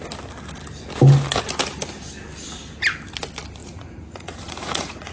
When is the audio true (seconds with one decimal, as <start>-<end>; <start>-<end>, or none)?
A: 0.0-3.6